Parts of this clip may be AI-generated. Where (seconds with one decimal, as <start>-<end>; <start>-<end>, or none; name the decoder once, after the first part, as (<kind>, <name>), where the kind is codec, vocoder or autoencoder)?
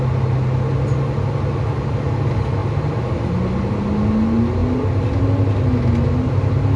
none